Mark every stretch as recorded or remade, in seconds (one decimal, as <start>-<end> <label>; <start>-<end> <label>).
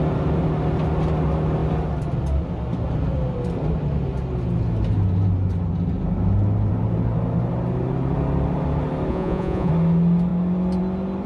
0.0-9.1 recorded; 9.1-9.7 remade; 9.7-11.3 recorded